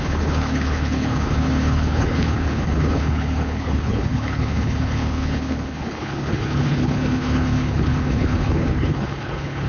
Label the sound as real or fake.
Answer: fake